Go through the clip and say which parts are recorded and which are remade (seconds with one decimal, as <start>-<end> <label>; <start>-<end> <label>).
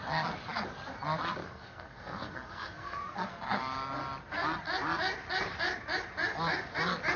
0.0-1.4 recorded; 1.4-3.6 remade; 3.6-7.2 recorded